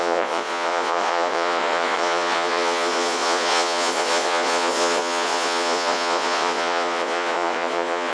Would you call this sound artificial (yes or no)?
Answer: yes